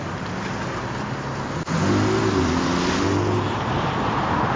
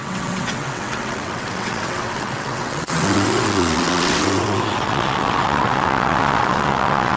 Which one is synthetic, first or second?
second